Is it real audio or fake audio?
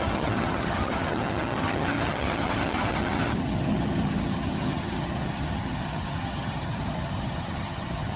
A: fake